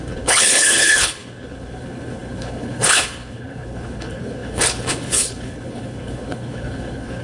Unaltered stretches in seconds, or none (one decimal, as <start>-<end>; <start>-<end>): none